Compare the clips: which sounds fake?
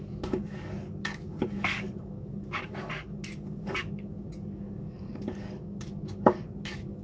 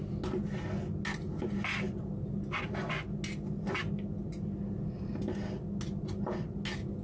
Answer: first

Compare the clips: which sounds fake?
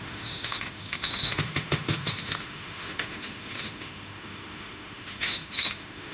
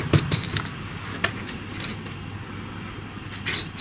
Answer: first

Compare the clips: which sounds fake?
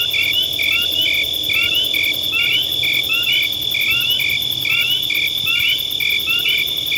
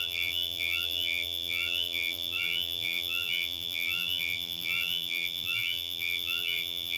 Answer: second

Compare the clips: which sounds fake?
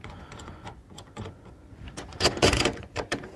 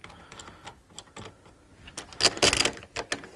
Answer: first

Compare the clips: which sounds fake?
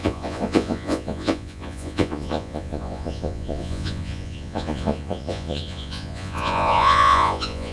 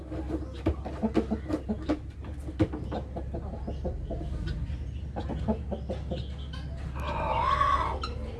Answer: first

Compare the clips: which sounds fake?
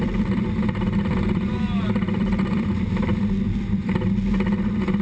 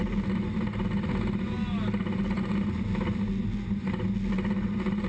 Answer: first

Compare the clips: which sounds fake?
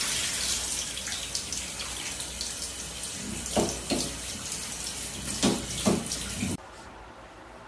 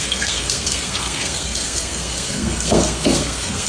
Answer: second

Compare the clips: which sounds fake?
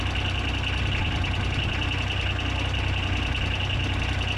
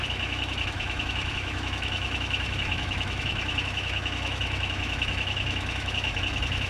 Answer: second